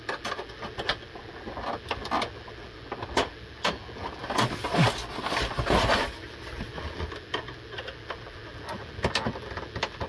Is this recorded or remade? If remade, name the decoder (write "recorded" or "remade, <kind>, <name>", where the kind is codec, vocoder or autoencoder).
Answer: recorded